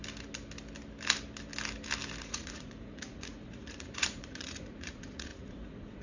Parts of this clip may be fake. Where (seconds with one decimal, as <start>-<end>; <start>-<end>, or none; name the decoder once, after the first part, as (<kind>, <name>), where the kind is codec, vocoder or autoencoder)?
2.2-6.0 (vocoder, Vocos)